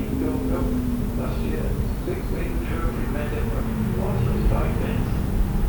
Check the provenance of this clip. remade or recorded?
recorded